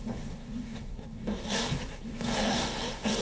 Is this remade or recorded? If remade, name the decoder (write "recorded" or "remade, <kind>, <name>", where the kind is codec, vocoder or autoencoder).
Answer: remade, codec, SNAC